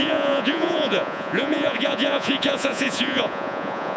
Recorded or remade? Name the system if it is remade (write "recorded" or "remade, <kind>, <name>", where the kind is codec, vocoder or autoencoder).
remade, vocoder, Vocos